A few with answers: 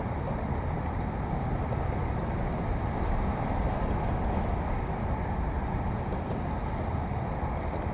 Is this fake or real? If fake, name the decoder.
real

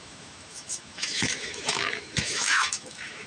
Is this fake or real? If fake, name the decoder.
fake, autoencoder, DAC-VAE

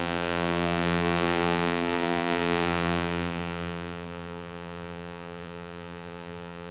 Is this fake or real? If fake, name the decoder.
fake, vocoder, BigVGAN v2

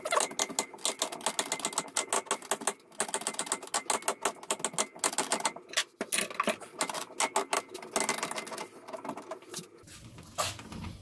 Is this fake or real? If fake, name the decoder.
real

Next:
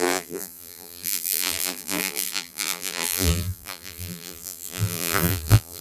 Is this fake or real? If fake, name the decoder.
fake, vocoder, BigVGAN v2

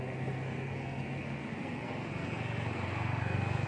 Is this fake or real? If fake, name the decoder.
fake, codec, SNAC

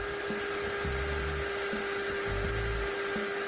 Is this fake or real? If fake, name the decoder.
real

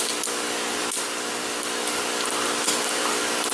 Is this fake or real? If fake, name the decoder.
real